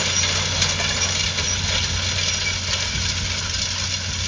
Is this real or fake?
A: real